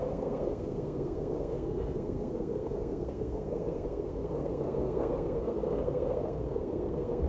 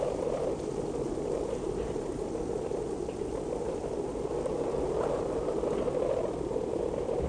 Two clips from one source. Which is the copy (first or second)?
first